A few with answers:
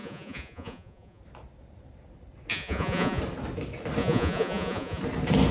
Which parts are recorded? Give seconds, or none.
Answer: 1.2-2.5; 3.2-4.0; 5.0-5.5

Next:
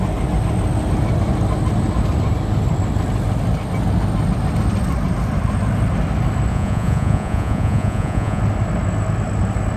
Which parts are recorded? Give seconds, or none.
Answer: 0.0-6.5; 8.4-9.8